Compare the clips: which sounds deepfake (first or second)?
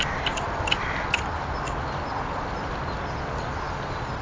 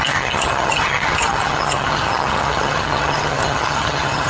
second